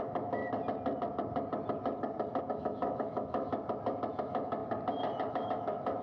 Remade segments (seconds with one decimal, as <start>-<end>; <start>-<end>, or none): 0.0-0.4; 2.4-3.5; 4.1-4.6; 5.3-6.0